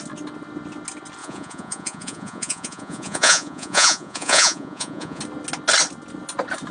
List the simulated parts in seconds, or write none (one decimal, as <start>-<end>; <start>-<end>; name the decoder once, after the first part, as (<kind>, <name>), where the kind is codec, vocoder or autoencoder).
1.2-5.2 (vocoder, Vocos)